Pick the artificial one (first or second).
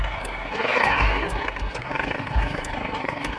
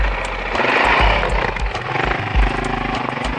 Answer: first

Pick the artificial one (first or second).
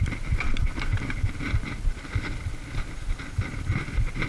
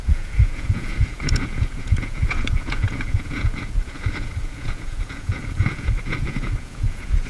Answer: second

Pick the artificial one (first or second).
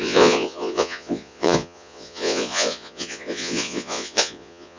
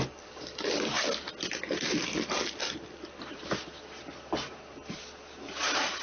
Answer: first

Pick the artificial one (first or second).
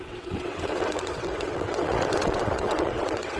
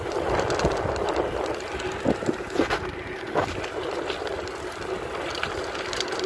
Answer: first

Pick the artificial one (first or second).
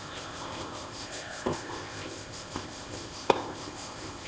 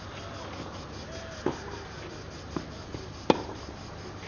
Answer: first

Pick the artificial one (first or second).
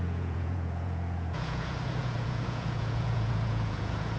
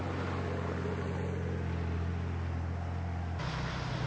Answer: first